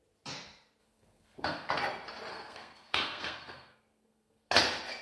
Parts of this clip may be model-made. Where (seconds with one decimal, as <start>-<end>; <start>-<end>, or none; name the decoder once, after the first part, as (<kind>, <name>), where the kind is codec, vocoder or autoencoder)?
0.8-1.7 (codec, SNAC); 2.3-4.5